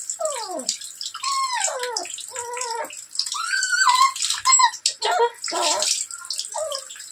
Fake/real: real